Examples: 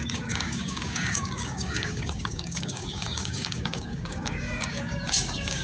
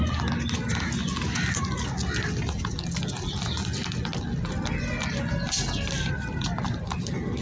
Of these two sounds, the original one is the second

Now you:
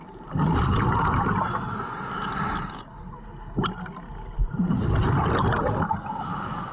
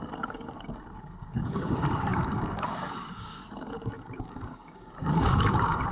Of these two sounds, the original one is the first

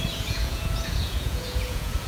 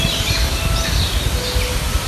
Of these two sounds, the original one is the second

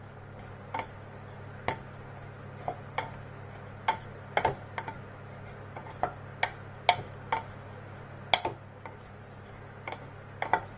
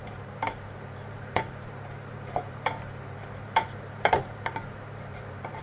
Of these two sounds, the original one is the first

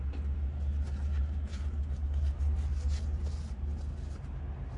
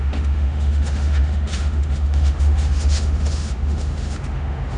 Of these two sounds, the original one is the first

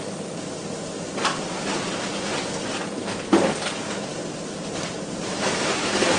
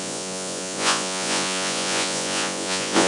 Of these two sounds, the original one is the first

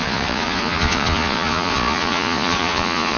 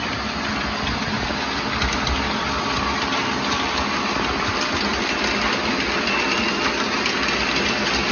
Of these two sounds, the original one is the second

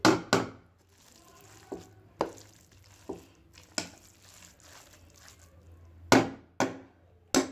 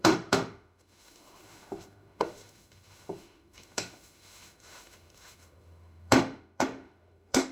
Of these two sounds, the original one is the first